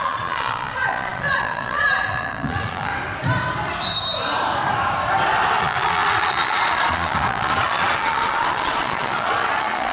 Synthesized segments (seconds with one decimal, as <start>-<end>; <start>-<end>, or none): 0.0-2.9; 5.6-9.9